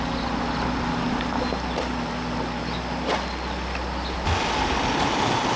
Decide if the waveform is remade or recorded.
recorded